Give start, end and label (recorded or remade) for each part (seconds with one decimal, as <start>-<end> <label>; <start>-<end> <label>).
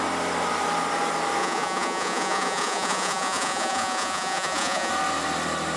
0.0-1.4 recorded; 1.4-4.9 remade; 4.9-5.8 recorded